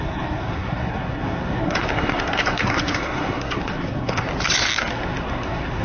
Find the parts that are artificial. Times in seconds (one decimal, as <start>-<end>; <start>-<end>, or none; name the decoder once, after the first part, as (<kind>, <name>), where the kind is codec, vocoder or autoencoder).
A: 0.0-4.3 (codec, SNAC); 4.9-5.8